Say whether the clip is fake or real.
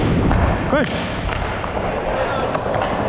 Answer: real